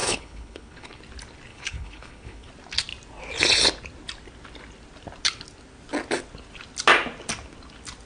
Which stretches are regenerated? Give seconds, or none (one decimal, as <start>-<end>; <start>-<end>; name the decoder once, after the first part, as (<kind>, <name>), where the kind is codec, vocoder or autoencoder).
0.0-1.0 (codec, HILCodec); 1.5-2.5